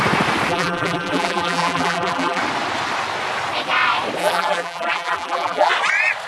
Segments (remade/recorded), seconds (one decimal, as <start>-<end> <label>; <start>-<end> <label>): 0.0-0.5 recorded; 0.5-2.4 remade; 2.4-4.2 recorded; 4.2-5.7 remade; 5.7-6.3 recorded